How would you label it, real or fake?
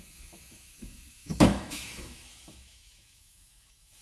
fake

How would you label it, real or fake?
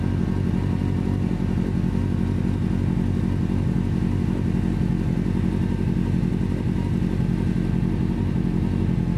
real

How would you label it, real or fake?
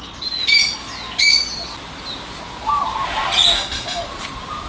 real